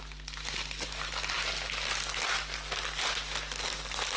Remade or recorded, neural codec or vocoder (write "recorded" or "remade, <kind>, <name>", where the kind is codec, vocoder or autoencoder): recorded